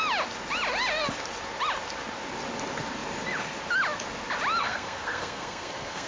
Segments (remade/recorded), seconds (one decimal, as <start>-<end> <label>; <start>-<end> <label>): 0.0-4.6 recorded; 4.6-6.1 remade